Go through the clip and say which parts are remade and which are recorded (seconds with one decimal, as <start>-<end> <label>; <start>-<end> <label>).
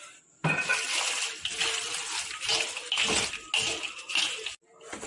0.0-0.7 recorded; 0.7-1.9 remade; 1.9-5.1 recorded